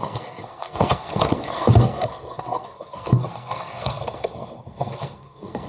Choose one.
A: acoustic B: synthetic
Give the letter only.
B